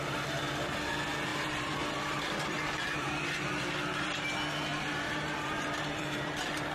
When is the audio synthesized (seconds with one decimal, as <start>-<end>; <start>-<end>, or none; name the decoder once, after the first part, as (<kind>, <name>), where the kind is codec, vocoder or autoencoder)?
1.3-3.4 (vocoder, BigVGAN v2); 4.7-6.7